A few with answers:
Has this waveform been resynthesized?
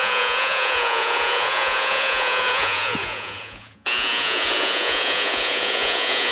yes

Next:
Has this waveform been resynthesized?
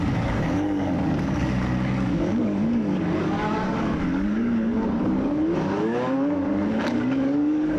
yes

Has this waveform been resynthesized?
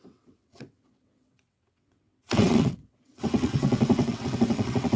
yes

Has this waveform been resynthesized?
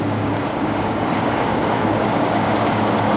yes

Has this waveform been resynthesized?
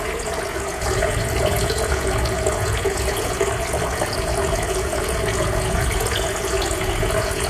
yes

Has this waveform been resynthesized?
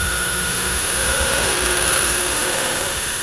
yes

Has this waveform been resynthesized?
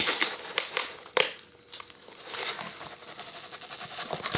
no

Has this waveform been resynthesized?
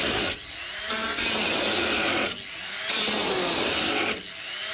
no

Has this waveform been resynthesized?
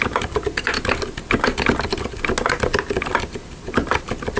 no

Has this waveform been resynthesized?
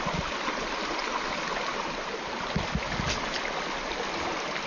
no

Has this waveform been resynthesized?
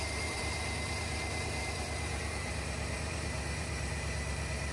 yes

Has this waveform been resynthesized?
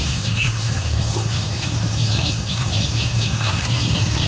yes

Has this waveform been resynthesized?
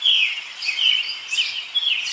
no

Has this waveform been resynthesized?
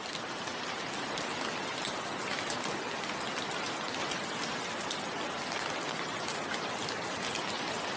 no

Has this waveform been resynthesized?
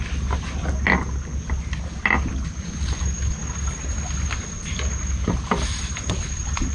no